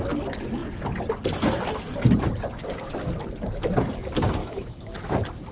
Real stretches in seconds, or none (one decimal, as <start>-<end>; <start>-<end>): 0.0-4.4; 5.0-5.5